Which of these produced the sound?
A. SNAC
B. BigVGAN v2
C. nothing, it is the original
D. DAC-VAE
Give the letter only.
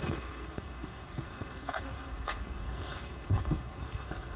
A